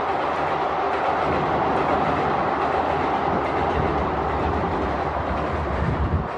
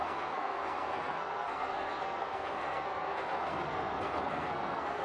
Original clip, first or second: first